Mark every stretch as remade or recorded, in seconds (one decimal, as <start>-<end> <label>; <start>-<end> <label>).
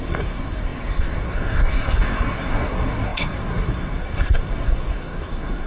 0.0-5.7 remade